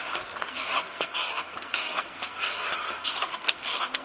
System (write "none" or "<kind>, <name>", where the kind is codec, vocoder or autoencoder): codec, SNAC